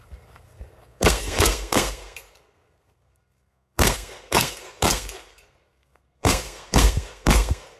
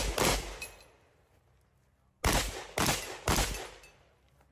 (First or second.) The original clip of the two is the second